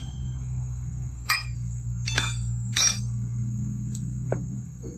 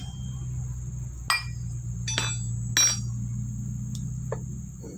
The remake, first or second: first